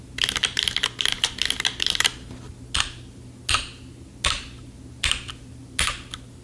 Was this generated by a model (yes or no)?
no